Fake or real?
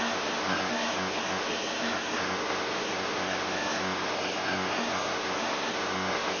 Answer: fake